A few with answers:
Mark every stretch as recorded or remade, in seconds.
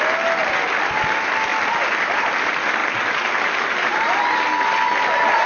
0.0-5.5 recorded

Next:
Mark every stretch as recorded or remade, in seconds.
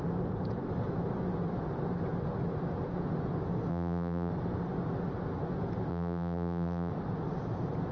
0.0-3.7 recorded; 3.7-4.3 remade; 4.3-5.9 recorded; 5.9-6.9 remade; 6.9-7.9 recorded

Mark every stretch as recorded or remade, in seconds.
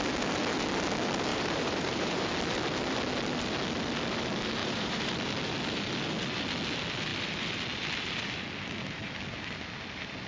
0.0-1.3 recorded; 1.3-2.3 remade; 2.3-4.6 recorded; 4.6-5.1 remade; 5.1-10.3 recorded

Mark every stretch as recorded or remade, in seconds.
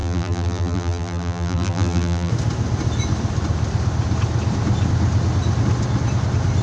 0.0-2.3 remade; 2.3-6.6 recorded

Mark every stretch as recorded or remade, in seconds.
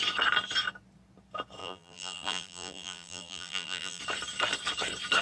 0.0-1.6 recorded; 1.6-4.0 remade; 4.0-5.2 recorded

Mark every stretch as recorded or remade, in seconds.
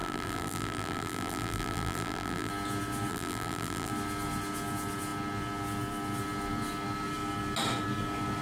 0.0-2.5 remade; 2.5-3.1 recorded; 3.1-3.9 remade; 3.9-8.4 recorded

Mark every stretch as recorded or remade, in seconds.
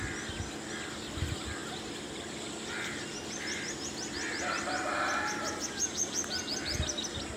0.0-1.6 recorded; 1.6-4.0 remade; 4.0-7.4 recorded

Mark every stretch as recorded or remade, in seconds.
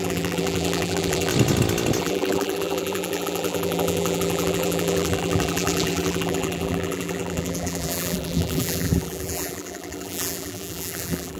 0.0-1.3 remade; 1.3-2.0 recorded; 2.0-11.4 remade